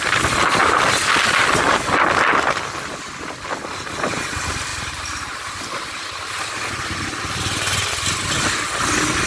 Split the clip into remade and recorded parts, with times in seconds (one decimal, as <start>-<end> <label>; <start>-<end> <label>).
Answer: 0.0-4.7 recorded; 4.7-5.6 remade; 5.6-9.3 recorded

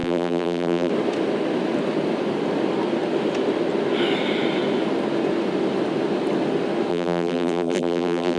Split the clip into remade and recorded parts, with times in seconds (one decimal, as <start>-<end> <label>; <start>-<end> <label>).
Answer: 0.0-0.9 remade; 0.9-6.9 recorded; 6.9-8.4 remade

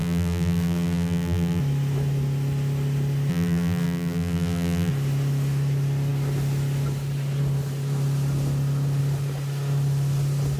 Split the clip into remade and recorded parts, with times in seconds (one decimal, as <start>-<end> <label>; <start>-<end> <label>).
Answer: 0.0-1.6 remade; 1.6-3.3 recorded; 3.3-4.9 remade; 4.9-10.6 recorded

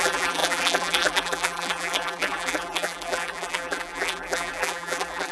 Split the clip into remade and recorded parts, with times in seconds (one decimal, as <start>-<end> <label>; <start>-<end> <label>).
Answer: 0.0-5.3 remade

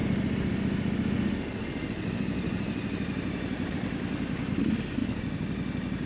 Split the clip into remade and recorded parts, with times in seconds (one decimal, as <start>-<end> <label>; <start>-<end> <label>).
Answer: 0.0-6.1 recorded